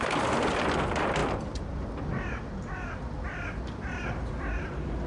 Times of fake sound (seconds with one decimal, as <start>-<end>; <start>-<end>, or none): 0.0-5.1